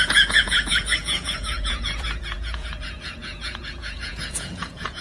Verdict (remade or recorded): remade